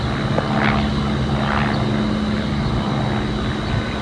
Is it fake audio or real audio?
real